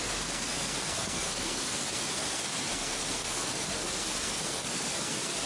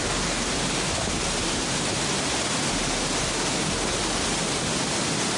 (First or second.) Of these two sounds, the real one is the second